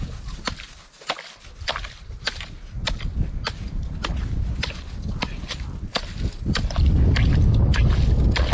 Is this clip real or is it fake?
real